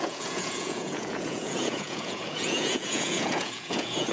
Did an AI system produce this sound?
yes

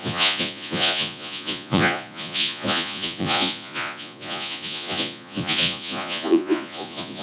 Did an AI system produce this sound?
yes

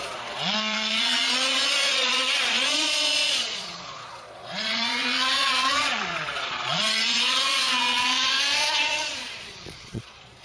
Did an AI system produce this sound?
yes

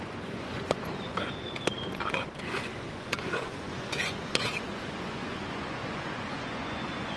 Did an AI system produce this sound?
yes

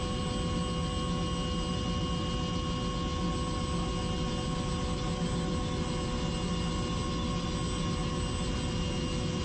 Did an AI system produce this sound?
no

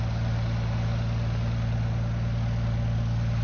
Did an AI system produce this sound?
no